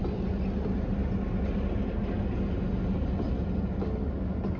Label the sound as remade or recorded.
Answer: recorded